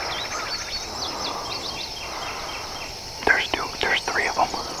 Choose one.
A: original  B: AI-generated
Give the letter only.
A